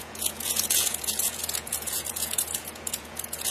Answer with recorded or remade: remade